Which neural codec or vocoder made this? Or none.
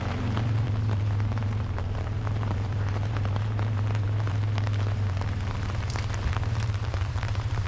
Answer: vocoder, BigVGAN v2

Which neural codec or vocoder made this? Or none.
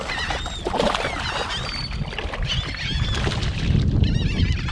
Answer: none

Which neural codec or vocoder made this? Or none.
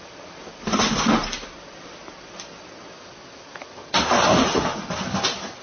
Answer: none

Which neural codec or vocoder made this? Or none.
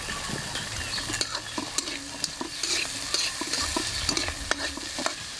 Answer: none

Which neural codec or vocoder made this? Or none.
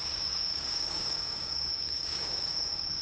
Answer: codec, DAC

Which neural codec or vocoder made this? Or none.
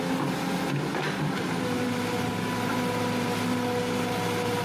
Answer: none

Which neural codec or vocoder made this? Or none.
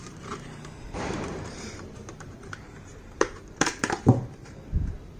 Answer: vocoder, BigVGAN v2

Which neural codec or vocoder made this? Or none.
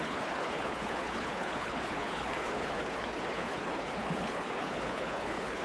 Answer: codec, HILCodec